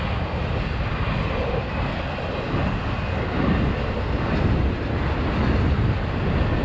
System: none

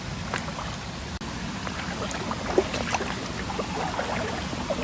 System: none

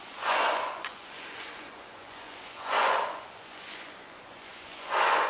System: vocoder, Vocos